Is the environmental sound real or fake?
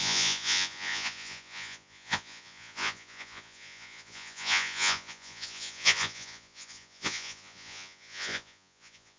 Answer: fake